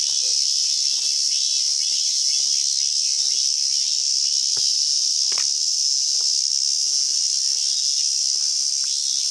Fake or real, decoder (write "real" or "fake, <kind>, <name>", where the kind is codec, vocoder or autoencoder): real